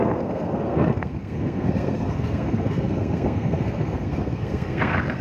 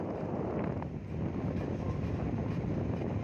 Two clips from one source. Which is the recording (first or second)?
second